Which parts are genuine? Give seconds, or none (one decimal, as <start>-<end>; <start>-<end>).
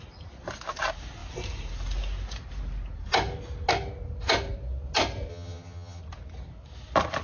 0.0-5.3; 6.0-7.2